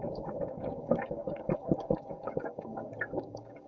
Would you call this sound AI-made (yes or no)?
yes